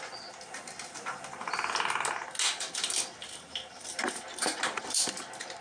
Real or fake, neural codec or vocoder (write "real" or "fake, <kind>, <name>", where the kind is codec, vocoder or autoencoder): real